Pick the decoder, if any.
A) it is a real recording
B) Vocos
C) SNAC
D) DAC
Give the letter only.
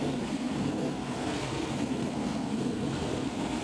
C